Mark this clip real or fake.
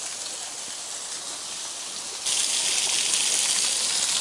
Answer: real